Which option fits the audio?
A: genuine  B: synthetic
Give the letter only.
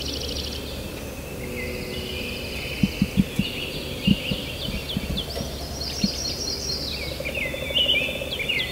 A